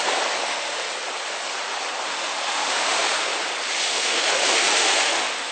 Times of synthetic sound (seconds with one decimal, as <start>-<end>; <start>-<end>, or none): 0.4-0.9; 2.1-3.3; 3.9-5.5